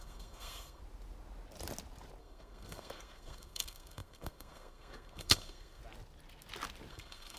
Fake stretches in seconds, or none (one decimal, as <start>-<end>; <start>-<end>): 0.0-0.8; 2.2-5.8; 6.9-7.4